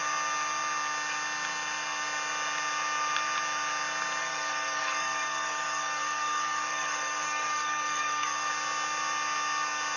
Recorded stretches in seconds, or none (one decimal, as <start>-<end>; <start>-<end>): 0.0-4.2; 8.5-10.0